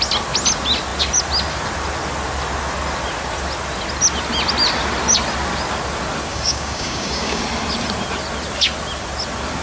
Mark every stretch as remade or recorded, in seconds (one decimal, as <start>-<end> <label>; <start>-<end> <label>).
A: 0.0-6.3 recorded; 6.3-7.4 remade; 7.4-9.6 recorded